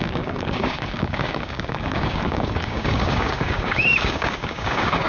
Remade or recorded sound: remade